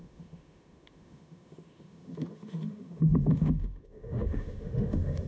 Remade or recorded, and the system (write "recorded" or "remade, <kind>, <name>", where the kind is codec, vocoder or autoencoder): remade, autoencoder, DAC-VAE